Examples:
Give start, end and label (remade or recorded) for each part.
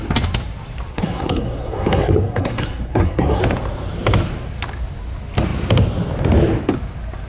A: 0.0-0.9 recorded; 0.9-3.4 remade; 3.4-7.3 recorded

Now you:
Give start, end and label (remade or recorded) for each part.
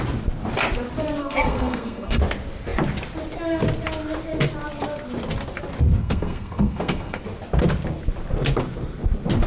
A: 0.0-1.2 recorded; 1.2-2.2 remade; 2.2-6.0 recorded; 6.0-7.2 remade; 7.2-9.5 recorded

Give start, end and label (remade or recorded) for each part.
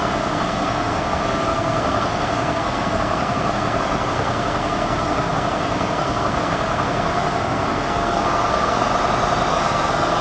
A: 0.0-8.9 remade; 8.9-9.5 recorded; 9.5-10.2 remade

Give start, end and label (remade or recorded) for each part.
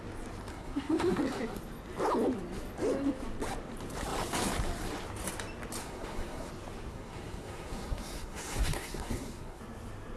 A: 0.0-0.5 recorded; 0.5-1.2 remade; 1.2-5.8 recorded; 5.8-6.5 remade; 6.5-6.9 recorded; 6.9-9.6 remade; 9.6-10.2 recorded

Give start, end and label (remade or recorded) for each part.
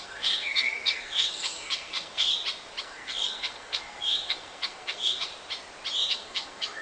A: 0.0-2.3 remade; 2.3-2.8 recorded; 2.8-5.3 remade; 5.3-6.1 recorded; 6.1-6.8 remade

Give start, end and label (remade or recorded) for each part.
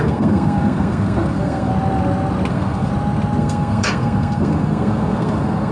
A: 0.0-1.7 remade; 1.7-2.5 recorded; 2.5-2.9 remade; 2.9-3.4 recorded; 3.4-5.7 remade